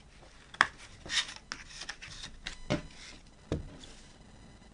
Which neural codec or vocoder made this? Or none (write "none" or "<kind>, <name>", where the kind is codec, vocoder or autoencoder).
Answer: none